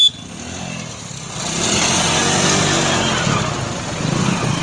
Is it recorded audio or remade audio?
recorded